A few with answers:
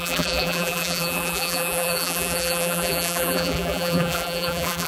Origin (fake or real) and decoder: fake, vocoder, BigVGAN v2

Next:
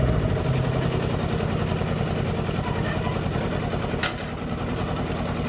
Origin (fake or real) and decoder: real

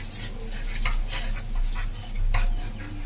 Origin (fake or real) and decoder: real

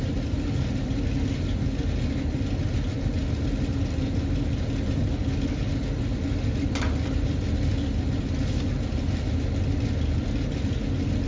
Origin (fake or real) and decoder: real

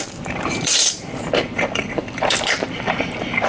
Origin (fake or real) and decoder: fake, vocoder, BigVGAN v2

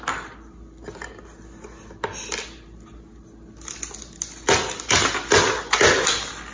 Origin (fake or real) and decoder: real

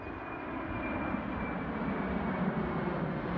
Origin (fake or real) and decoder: real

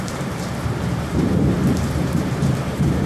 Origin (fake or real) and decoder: fake, vocoder, BigVGAN v2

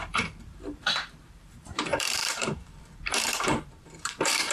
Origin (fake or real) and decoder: fake, vocoder, BigVGAN v2